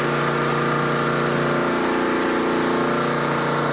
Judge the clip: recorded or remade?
recorded